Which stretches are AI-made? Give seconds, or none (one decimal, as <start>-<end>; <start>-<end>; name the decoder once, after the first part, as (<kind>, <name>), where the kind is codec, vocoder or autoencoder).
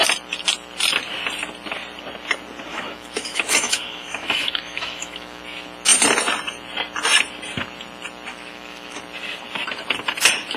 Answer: 2.7-5.4 (autoencoder, DAC-VAE); 8.3-9.0